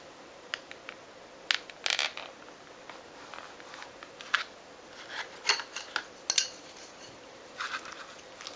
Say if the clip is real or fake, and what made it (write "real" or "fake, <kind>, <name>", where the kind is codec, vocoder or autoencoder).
real